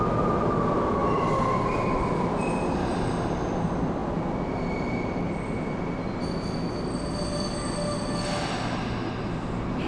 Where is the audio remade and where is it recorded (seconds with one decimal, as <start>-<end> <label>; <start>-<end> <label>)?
0.0-9.9 recorded